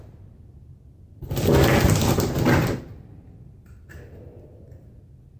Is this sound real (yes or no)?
yes